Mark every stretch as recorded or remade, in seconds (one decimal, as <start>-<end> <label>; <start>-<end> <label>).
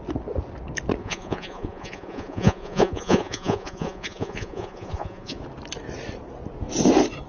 0.0-1.0 recorded; 1.0-5.4 remade; 5.4-7.3 recorded